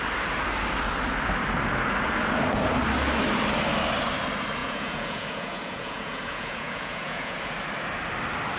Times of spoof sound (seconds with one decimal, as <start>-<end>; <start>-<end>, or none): 4.6-7.5